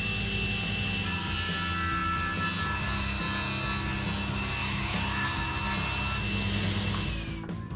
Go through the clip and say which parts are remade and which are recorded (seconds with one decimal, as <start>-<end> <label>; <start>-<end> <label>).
0.0-4.6 recorded; 4.6-5.5 remade; 5.5-7.8 recorded